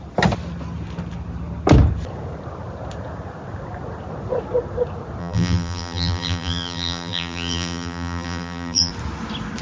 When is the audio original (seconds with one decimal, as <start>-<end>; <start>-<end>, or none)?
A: 0.0-5.2; 8.9-9.6